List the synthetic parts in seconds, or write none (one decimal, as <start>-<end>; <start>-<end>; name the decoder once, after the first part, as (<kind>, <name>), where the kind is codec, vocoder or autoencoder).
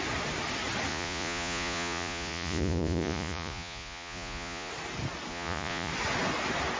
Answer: 0.9-4.7 (vocoder, Vocos); 5.3-5.9